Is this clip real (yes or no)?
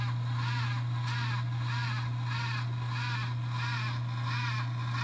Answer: yes